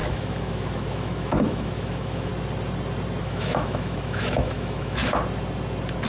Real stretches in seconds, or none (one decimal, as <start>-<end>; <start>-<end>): 2.3-3.2; 5.0-6.1